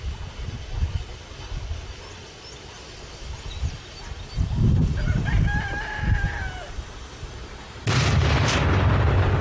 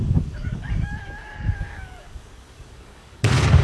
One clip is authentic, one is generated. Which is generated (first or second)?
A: second